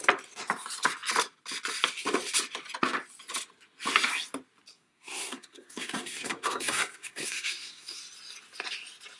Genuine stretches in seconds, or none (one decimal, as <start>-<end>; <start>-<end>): 0.0-4.7; 8.0-9.2